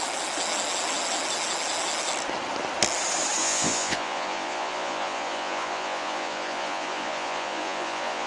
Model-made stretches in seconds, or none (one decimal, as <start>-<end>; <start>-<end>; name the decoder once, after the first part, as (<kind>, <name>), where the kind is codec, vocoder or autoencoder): 3.4-8.3 (vocoder, Vocos)